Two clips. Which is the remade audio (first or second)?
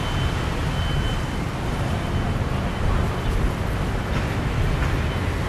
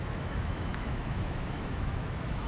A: second